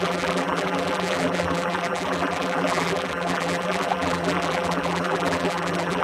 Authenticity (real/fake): fake